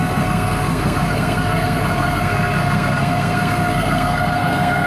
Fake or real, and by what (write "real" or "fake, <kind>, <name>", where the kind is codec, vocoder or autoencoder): fake, codec, SNAC